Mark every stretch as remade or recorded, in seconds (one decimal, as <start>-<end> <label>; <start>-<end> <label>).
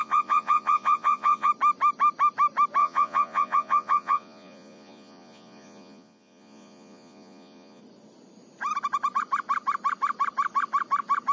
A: 0.0-1.5 remade; 1.5-2.8 recorded; 2.8-7.8 remade; 7.8-11.3 recorded